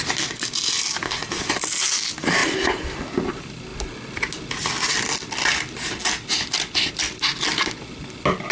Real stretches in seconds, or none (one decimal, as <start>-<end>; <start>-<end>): 3.7-8.5